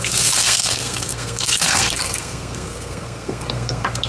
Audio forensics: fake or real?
fake